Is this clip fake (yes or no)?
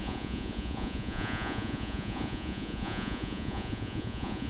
yes